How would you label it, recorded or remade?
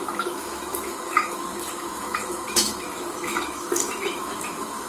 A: remade